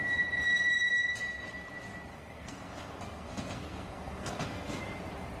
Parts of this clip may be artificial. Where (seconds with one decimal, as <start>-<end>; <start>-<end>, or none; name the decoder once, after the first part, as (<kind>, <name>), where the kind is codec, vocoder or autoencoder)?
2.1-4.8 (codec, SNAC)